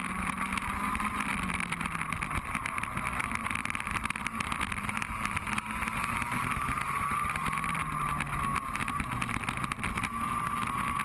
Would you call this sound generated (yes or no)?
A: no